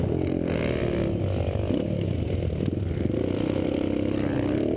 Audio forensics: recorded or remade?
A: recorded